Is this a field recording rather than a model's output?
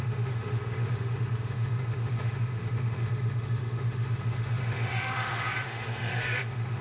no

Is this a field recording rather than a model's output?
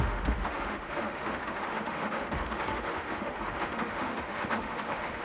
no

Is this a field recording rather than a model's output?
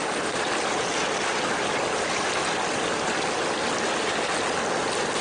yes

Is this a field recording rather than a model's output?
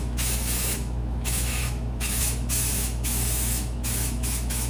no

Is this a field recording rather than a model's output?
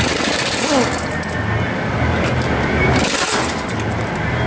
yes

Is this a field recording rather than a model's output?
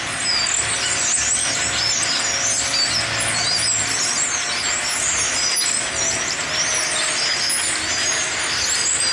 yes